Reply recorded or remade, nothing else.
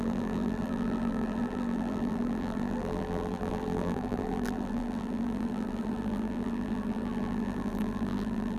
remade